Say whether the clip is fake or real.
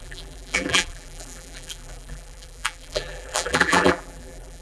fake